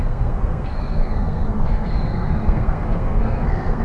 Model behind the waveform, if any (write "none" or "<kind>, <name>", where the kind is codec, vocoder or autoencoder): codec, SNAC